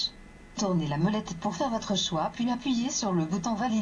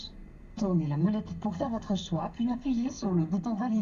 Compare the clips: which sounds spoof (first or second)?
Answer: second